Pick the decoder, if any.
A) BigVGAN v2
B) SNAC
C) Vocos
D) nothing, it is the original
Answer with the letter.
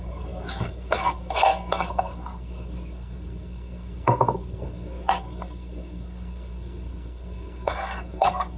B